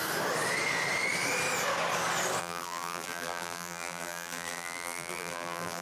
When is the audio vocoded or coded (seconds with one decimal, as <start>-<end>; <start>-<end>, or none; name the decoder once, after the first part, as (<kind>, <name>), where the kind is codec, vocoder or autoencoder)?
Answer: 2.4-5.8 (vocoder, BigVGAN v2)